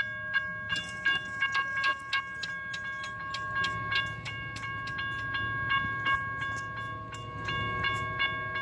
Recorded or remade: recorded